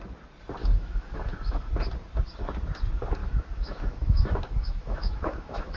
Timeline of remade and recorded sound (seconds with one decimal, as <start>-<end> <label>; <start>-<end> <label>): 0.0-0.6 recorded; 0.6-1.7 remade; 1.7-3.2 recorded; 3.2-5.8 remade